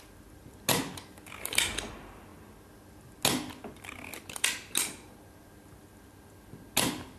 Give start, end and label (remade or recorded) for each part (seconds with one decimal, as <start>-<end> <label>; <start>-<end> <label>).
0.0-7.2 recorded